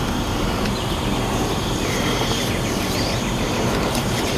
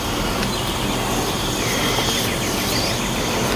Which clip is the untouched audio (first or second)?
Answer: second